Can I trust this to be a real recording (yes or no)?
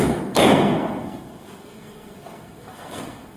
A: no